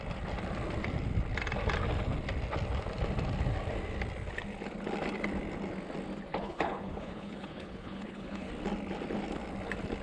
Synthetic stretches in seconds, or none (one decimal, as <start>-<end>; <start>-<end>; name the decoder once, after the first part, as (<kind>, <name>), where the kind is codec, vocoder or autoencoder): 6.3-8.5 (codec, HILCodec)